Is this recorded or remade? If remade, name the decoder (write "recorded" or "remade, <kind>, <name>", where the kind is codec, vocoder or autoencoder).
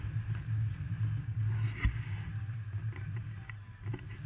recorded